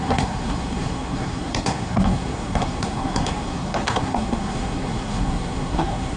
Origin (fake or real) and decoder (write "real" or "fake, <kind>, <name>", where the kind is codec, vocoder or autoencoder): fake, codec, SNAC